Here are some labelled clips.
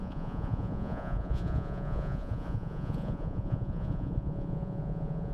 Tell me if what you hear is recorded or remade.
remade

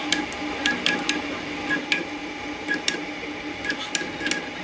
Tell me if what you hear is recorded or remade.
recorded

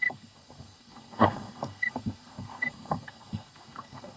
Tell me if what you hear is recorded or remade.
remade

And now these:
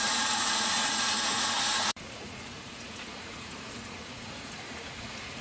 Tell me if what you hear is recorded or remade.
remade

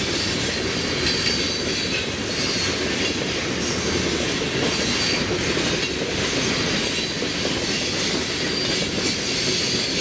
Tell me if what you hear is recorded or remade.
recorded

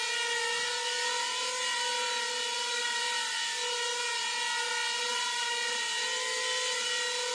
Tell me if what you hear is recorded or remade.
recorded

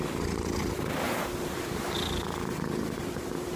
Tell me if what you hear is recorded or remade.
recorded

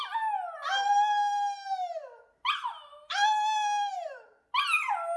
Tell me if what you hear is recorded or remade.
recorded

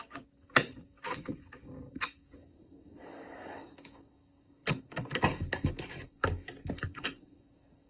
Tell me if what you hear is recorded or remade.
remade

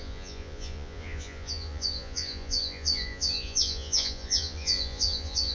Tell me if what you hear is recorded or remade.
remade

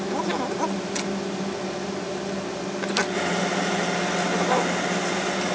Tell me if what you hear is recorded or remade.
recorded